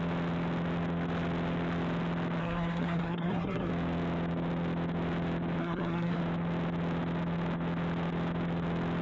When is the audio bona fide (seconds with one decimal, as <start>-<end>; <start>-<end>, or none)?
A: 0.0-2.4; 3.7-5.6; 6.2-9.0